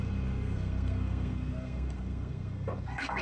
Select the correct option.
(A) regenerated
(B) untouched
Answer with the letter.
A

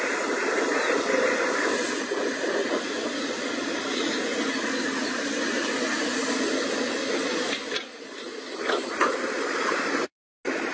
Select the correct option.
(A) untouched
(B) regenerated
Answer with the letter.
A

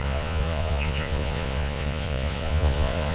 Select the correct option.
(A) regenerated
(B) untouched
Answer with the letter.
A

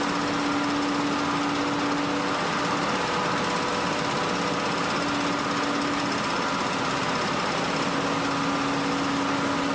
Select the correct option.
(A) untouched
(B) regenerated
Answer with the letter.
A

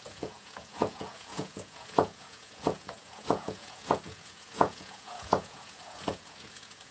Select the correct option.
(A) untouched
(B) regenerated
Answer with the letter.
B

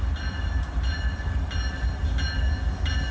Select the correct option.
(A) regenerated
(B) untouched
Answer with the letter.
B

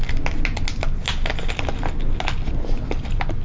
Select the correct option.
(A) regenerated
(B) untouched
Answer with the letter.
B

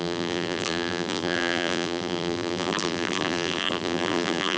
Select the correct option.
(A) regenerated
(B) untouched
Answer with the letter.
A